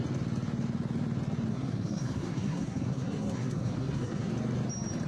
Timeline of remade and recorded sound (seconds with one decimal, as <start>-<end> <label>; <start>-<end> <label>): 0.0-1.5 recorded; 1.5-4.3 remade; 4.3-5.1 recorded